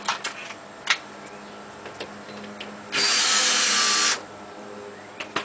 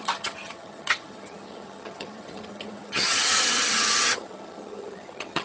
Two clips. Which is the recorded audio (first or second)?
first